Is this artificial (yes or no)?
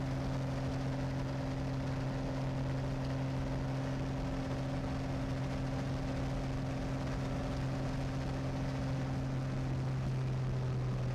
no